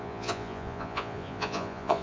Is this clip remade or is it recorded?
remade